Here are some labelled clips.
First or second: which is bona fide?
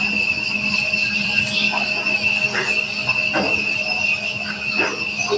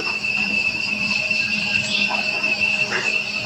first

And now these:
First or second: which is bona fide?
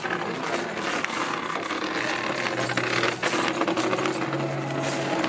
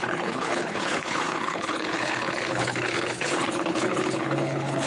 first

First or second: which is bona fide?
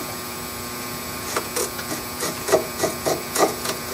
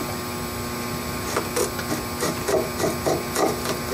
second